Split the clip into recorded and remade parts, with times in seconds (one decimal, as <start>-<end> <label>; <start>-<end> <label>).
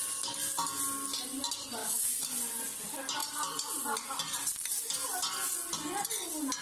0.0-1.8 recorded; 1.8-2.3 remade; 2.3-6.6 recorded